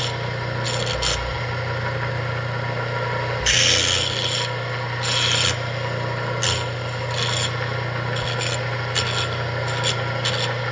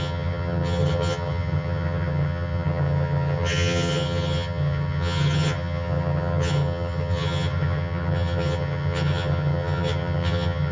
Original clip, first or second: first